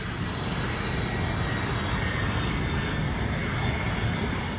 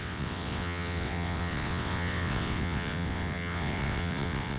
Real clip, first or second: first